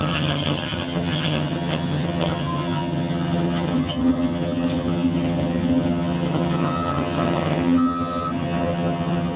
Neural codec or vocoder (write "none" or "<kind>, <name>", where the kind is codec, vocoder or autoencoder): vocoder, HiFi-GAN